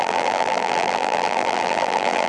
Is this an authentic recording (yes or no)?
no